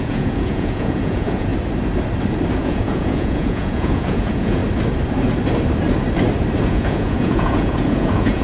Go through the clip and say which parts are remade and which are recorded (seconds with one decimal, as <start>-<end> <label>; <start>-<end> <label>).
0.0-1.5 remade; 1.5-2.6 recorded; 2.6-4.6 remade; 4.6-6.6 recorded; 6.6-8.4 remade